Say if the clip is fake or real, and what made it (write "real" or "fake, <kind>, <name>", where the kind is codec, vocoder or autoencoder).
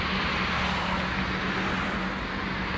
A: real